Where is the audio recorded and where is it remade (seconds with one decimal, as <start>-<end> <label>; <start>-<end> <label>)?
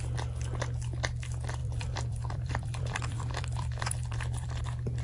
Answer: 0.0-1.6 recorded; 1.6-4.6 remade; 4.6-5.0 recorded